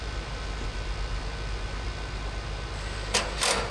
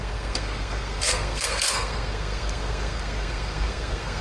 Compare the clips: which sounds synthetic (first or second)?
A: second